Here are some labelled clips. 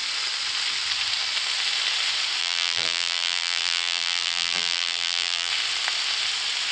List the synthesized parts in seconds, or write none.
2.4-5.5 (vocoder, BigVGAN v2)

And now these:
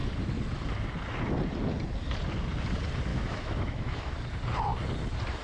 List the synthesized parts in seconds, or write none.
3.1-4.1 (autoencoder, DAC-VAE)

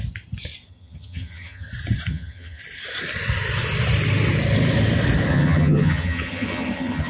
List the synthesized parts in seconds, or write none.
0.7-1.7 (vocoder, HiFi-GAN); 2.1-2.6; 5.3-7.1